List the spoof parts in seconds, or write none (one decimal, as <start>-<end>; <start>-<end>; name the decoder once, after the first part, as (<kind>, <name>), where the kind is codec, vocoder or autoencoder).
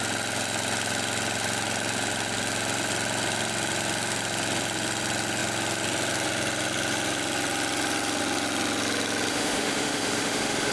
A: 9.3-10.7 (autoencoder, DAC-VAE)